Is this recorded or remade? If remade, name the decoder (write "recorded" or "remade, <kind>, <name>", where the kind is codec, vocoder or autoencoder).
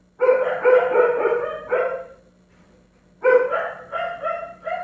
remade, vocoder, BigVGAN v2